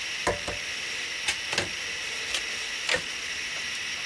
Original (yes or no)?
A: yes